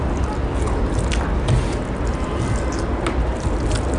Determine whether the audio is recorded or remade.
recorded